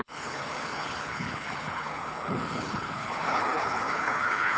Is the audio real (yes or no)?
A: no